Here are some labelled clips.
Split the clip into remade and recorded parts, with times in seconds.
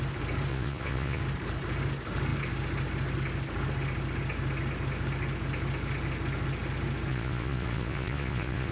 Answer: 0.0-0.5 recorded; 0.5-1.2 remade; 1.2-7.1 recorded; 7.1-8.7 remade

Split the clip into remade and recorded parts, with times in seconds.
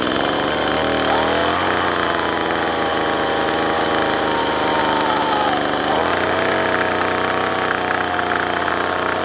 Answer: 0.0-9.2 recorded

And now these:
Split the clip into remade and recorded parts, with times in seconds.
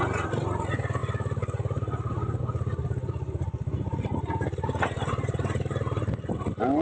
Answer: 0.0-6.8 recorded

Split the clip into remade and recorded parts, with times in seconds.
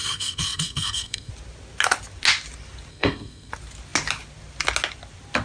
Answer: 0.0-1.3 remade; 1.3-2.9 recorded; 2.9-3.5 remade; 3.5-5.4 recorded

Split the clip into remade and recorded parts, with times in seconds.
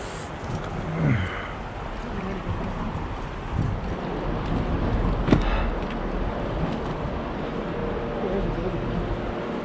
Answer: 0.0-2.4 recorded; 2.4-3.3 remade; 3.3-9.6 recorded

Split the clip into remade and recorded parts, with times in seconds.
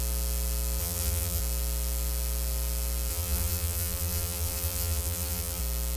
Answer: 0.0-0.8 recorded; 0.8-1.4 remade; 1.4-3.1 recorded; 3.1-5.6 remade; 5.6-6.0 recorded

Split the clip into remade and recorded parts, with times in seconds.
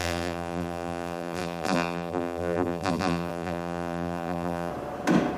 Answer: 0.0-4.7 remade; 4.7-5.4 recorded